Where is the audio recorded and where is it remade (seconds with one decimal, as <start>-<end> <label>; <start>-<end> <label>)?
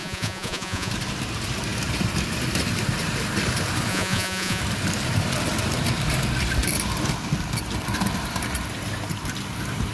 0.0-0.9 remade; 0.9-3.9 recorded; 3.9-4.6 remade; 4.6-9.9 recorded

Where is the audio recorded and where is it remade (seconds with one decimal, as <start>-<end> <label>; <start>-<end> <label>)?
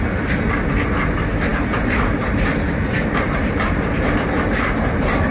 0.0-1.5 recorded; 1.5-4.4 remade; 4.4-5.3 recorded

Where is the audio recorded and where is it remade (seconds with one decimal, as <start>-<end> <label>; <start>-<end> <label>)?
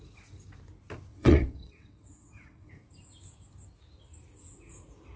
0.0-1.1 recorded; 1.1-2.7 remade; 2.7-5.2 recorded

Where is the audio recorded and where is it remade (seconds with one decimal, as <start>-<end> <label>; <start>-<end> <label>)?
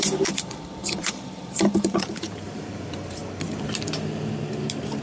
0.0-3.2 remade; 3.2-5.0 recorded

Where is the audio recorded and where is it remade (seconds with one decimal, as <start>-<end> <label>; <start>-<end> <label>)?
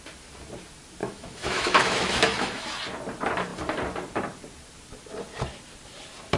0.0-1.0 recorded; 1.0-2.7 remade; 2.7-6.4 recorded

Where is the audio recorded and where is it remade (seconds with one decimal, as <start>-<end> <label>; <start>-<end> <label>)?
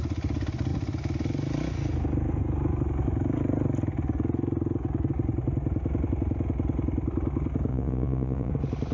0.0-7.7 recorded; 7.7-8.5 remade; 8.5-8.9 recorded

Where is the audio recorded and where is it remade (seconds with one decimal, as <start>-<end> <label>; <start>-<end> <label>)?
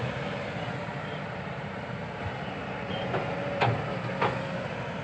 0.0-0.9 recorded; 0.9-3.9 remade; 3.9-5.0 recorded